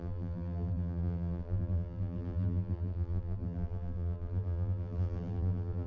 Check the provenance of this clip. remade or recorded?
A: remade